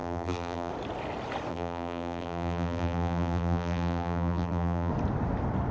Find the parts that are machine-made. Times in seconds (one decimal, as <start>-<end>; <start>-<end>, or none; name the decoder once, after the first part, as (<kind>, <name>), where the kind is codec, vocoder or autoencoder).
0.0-0.7 (vocoder, BigVGAN v2); 1.5-4.9